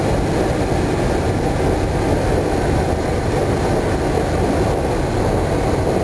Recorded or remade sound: recorded